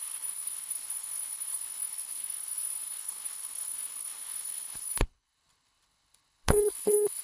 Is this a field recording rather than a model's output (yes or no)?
no